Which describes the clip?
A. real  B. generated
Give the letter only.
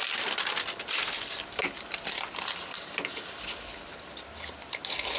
A